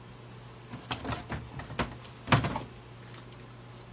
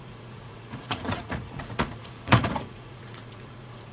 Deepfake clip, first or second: second